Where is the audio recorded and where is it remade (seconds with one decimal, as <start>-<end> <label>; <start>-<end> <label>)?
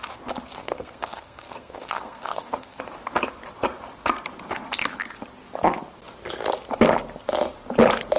0.0-0.6 recorded; 0.6-2.8 remade; 2.8-8.2 recorded